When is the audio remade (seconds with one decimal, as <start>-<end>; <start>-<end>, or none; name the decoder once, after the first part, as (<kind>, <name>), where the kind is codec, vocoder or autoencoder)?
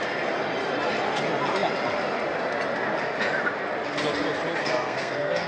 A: 4.6-5.5 (codec, SNAC)